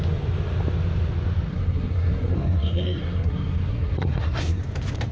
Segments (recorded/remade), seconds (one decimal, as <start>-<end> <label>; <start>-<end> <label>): 0.0-1.5 recorded; 1.5-4.6 remade; 4.6-5.1 recorded